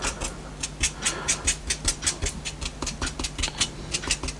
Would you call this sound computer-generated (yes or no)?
no